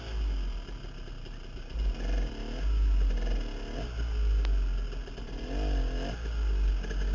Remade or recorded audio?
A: recorded